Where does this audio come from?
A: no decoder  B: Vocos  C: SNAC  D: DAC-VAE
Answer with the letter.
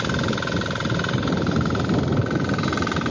A